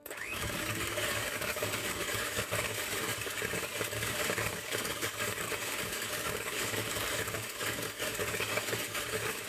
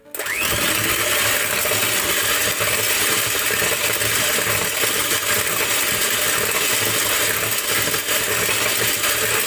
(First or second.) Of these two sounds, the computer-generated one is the first